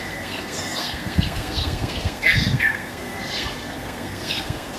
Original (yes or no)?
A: no